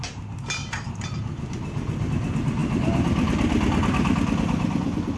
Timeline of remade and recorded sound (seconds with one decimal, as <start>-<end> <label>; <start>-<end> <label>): 0.0-0.6 recorded; 0.6-2.1 remade; 2.1-2.6 recorded; 2.6-5.2 remade